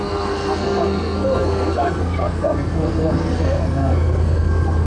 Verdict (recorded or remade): remade